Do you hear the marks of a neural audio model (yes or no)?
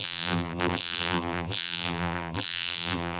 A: yes